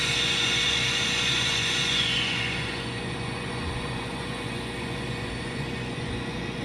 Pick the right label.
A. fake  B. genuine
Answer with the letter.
A